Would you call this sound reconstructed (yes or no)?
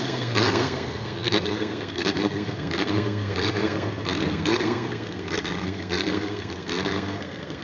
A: yes